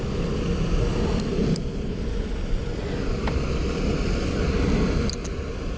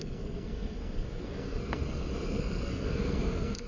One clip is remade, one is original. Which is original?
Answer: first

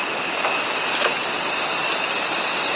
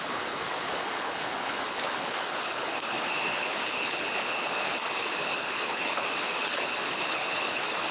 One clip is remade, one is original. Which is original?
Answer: first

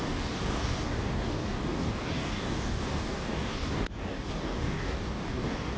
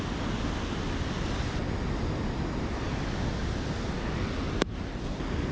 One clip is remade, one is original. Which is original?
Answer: second